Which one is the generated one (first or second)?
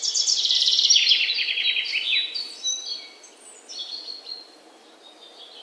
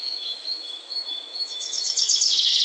second